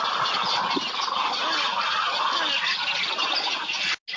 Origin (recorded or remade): recorded